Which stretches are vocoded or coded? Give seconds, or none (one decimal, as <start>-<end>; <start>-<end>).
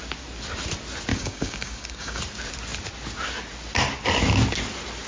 1.1-2.2